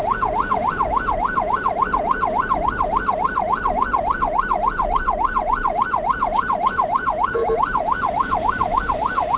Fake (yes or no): yes